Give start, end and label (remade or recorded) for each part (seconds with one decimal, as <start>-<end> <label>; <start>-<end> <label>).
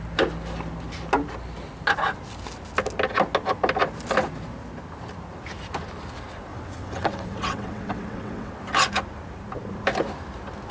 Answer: 0.0-6.5 recorded; 6.5-8.5 remade; 8.5-10.7 recorded